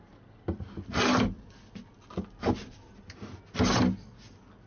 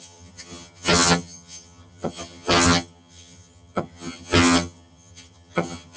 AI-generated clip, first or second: second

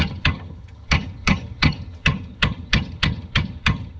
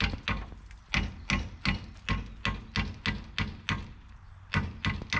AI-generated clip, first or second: first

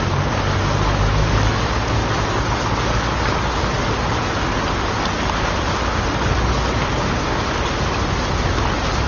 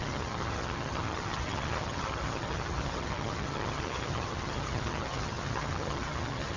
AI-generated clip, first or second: second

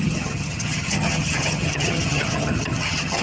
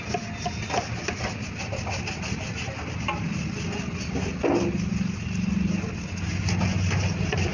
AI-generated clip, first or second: first